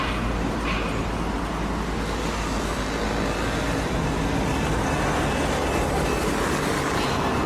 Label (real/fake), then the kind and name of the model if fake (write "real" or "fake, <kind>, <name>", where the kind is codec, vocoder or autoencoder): real